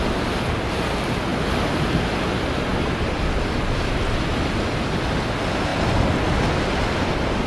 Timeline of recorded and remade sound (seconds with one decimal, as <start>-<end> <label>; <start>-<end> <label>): 0.0-7.5 recorded